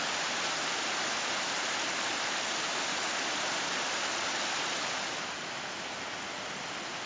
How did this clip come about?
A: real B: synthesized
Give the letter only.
A